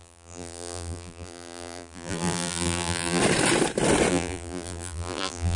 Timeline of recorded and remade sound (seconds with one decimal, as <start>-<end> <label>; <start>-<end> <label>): 0.0-3.2 remade; 3.2-4.1 recorded; 4.1-5.6 remade